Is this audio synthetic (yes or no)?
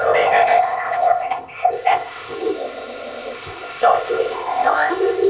yes